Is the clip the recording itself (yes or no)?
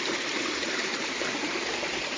yes